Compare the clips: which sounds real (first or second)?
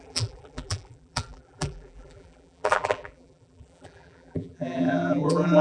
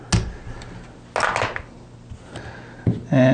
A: second